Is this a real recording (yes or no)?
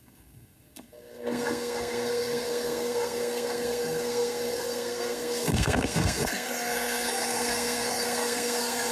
no